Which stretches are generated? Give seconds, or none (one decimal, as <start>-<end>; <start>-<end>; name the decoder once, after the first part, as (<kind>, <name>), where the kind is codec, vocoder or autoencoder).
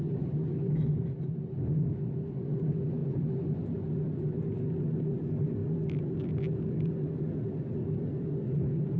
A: none